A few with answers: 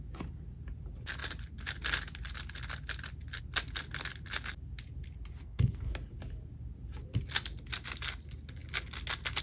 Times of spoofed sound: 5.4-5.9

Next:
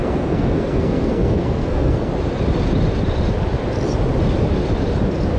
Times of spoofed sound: 0.0-2.1

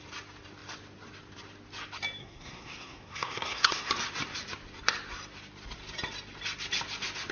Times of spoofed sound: 2.2-3.9

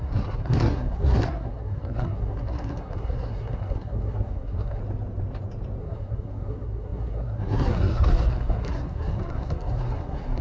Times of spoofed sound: 0.0-4.8; 5.8-10.4

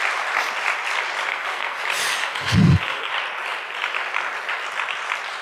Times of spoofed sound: 1.3-1.8; 2.2-3.1

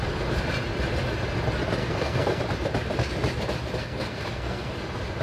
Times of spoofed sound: 1.8-2.4; 3.8-4.7

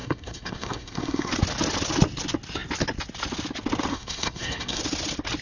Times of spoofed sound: 0.0-1.3; 3.9-4.8